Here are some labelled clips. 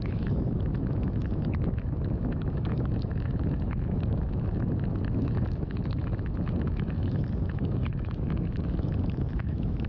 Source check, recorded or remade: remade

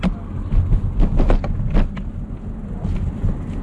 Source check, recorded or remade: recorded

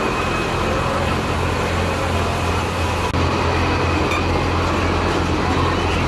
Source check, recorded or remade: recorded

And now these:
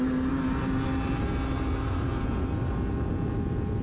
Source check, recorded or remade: recorded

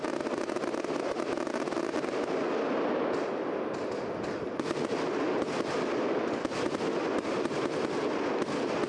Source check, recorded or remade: recorded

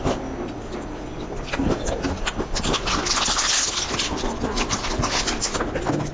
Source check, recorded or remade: recorded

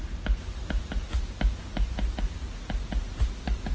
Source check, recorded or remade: recorded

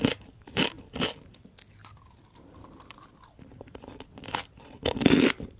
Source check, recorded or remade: recorded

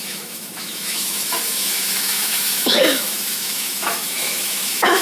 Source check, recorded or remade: remade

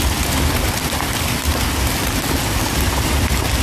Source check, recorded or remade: remade